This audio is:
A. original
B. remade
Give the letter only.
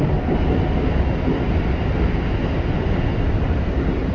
A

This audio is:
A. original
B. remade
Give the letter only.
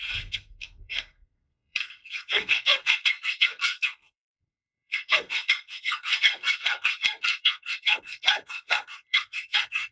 B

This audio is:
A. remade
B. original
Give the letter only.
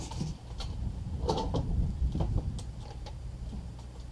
B